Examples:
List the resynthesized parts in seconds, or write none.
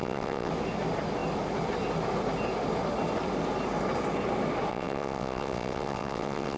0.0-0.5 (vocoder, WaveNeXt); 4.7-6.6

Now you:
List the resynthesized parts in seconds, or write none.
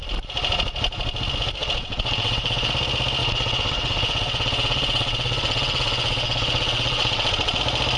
1.6-2.7 (vocoder, WaveNeXt); 3.2-7.6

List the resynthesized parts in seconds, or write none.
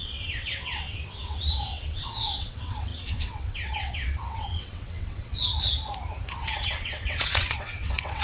0.0-5.3 (vocoder, WaveNeXt); 6.3-8.2